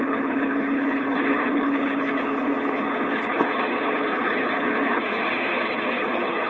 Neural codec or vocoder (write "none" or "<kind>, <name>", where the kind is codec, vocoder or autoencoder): codec, HILCodec